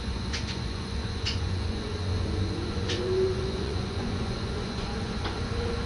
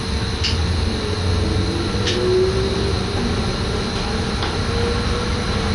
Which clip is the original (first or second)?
second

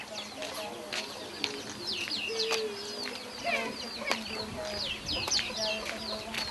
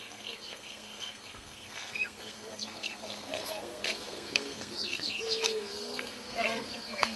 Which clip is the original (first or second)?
first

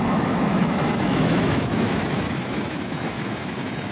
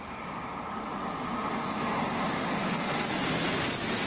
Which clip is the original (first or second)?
second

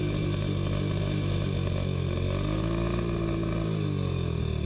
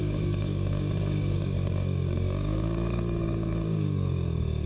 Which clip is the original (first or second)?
first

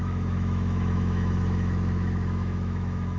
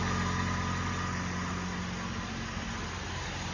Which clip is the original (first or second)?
second